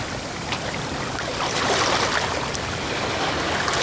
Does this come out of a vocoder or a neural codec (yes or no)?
yes